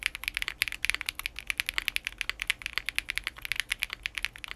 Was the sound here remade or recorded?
recorded